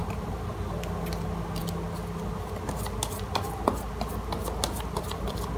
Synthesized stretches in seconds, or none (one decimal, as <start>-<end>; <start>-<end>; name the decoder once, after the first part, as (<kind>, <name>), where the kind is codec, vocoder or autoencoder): 0.0-0.5 (vocoder, BigVGAN v2)